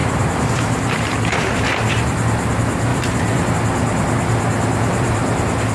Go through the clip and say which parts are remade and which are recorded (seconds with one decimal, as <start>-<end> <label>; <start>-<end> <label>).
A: 0.0-1.0 remade; 1.0-2.9 recorded; 2.9-3.5 remade; 3.5-5.7 recorded